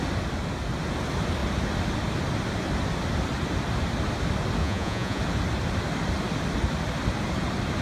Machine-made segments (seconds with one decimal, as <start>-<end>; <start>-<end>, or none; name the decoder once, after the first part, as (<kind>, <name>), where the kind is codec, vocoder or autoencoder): 4.6-5.2 (vocoder, Vocos)